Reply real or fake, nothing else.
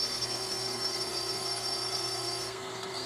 fake